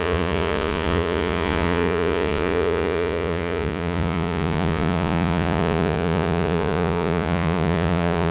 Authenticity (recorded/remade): remade